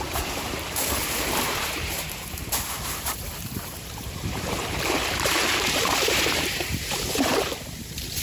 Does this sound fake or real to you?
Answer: fake